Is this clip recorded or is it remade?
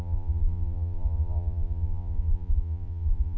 remade